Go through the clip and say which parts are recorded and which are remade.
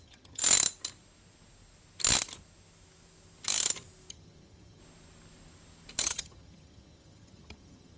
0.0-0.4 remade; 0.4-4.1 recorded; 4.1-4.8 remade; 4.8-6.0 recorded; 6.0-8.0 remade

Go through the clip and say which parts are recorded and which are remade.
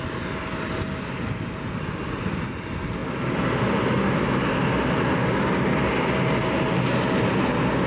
0.0-7.9 recorded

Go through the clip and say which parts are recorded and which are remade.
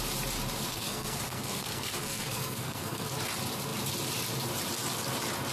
0.0-0.7 recorded; 0.7-3.1 remade; 3.1-5.5 recorded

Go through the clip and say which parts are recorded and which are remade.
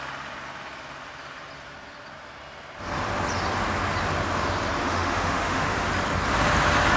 0.0-4.8 recorded; 4.8-5.9 remade; 5.9-7.0 recorded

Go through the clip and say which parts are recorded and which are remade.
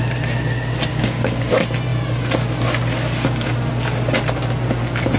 0.0-0.9 recorded; 0.9-1.5 remade; 1.5-5.2 recorded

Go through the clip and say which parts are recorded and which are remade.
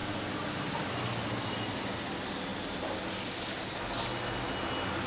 0.0-5.1 recorded